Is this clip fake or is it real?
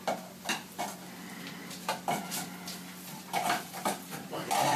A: real